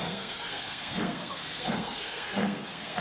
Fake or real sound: fake